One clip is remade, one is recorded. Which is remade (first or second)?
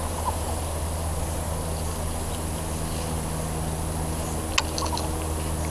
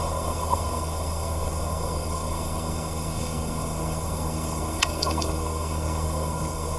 second